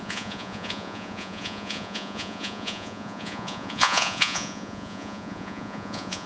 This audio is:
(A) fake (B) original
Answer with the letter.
A